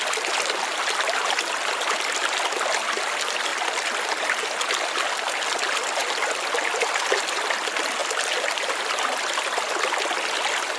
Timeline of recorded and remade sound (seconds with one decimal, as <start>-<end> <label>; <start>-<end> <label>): 0.0-10.8 recorded